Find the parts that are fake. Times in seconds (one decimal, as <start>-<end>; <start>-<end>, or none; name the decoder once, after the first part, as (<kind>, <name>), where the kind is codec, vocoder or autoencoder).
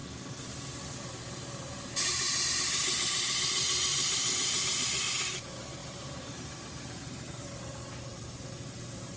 3.9-4.9 (vocoder, BigVGAN v2); 5.8-7.5; 8.1-9.2